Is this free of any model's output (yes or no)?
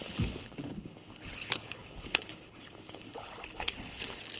no